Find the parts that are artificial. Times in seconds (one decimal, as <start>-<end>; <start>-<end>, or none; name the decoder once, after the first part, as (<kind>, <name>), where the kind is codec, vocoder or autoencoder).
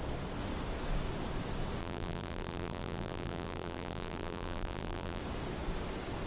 1.8-5.2 (vocoder, BigVGAN v2)